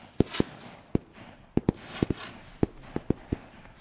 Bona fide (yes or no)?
yes